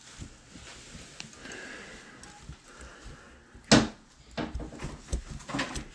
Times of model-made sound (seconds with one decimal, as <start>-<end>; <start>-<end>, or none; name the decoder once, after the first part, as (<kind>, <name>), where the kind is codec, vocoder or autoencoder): none